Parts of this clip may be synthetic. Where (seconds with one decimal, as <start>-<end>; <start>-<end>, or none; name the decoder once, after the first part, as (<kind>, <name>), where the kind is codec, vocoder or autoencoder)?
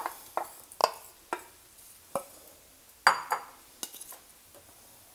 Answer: none